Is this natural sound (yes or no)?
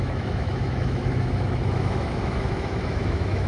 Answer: no